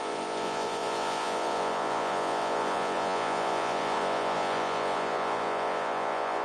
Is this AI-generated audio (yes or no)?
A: yes